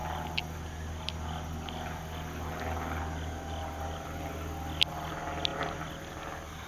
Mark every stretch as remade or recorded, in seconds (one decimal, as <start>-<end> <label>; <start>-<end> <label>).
0.0-6.7 recorded